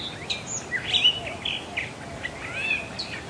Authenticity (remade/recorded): recorded